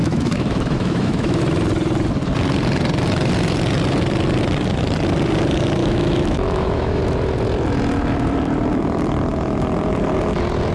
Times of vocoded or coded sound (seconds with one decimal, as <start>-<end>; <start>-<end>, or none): 0.0-1.4; 5.8-7.0